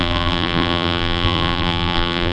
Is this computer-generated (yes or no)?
yes